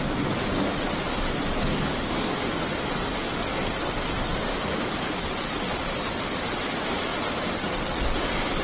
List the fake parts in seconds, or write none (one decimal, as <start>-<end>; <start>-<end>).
1.7-2.6; 4.5-5.2